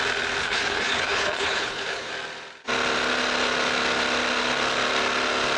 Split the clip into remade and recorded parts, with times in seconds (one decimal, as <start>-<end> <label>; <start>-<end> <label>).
0.0-0.4 recorded; 0.4-2.1 remade; 2.1-5.6 recorded